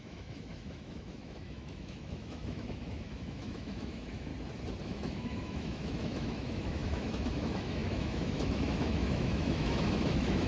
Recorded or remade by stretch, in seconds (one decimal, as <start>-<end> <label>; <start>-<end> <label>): 0.0-4.3 remade; 4.3-4.8 recorded; 4.8-10.5 remade